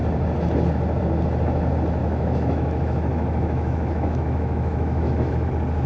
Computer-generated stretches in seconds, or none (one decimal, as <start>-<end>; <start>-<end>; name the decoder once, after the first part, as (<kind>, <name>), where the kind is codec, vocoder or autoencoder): 2.0-5.5 (autoencoder, DAC-VAE)